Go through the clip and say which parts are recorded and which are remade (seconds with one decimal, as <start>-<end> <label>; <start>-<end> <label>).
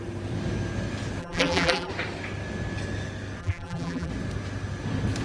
0.0-1.2 recorded; 1.2-1.9 remade; 1.9-3.4 recorded; 3.4-4.1 remade; 4.1-5.2 recorded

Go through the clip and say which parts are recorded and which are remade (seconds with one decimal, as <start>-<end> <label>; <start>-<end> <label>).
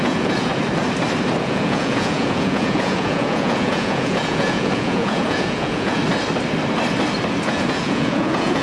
0.0-0.5 remade; 0.5-1.4 recorded; 1.4-6.0 remade; 6.0-7.5 recorded; 7.5-8.6 remade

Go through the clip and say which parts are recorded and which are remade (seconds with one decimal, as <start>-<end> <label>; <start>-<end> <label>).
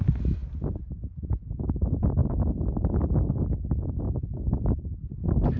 0.0-5.6 recorded